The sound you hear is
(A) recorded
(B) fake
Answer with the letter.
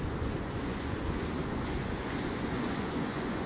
B